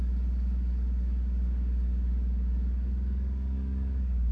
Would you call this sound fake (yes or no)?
yes